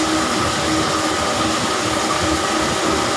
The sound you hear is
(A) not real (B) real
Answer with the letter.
B